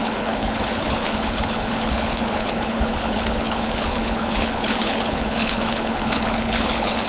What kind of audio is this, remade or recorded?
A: remade